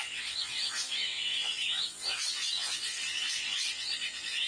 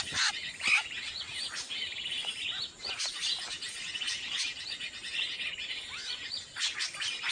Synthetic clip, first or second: first